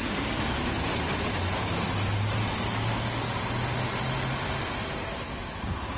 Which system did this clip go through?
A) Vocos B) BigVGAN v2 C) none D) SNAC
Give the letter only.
C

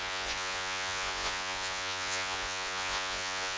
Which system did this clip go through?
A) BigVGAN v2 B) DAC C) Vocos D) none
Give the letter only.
C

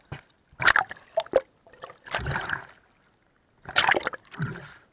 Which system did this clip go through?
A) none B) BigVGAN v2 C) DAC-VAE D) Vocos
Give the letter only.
A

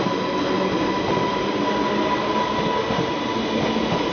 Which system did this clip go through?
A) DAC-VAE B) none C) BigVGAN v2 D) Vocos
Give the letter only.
B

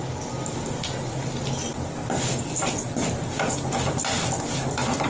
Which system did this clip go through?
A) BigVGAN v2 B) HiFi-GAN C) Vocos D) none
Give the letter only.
D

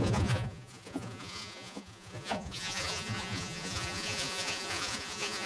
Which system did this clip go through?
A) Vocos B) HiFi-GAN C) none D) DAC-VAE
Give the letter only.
A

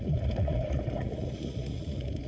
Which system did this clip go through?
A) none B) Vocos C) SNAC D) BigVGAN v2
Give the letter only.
B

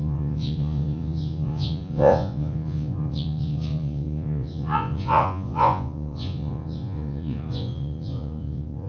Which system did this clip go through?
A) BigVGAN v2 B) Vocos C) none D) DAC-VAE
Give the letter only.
B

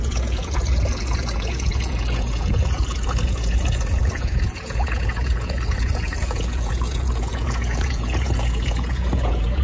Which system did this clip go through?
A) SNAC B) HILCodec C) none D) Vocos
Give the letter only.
D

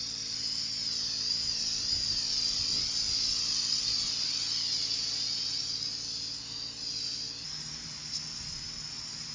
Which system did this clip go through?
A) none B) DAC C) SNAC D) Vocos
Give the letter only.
A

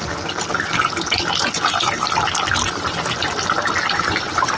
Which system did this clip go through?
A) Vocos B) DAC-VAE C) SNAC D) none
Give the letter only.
D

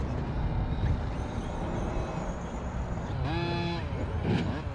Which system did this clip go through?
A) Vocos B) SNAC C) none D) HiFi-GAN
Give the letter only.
C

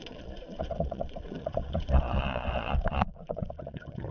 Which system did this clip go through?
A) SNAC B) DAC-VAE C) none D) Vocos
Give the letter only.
D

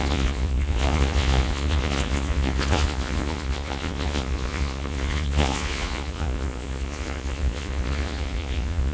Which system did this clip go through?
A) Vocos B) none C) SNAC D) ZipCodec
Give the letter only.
A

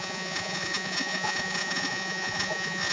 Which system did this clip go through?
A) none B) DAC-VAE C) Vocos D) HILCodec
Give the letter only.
C